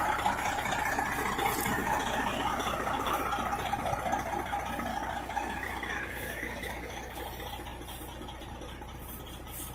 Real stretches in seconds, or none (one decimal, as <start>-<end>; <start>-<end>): 0.0-1.8; 3.2-4.9; 7.2-9.7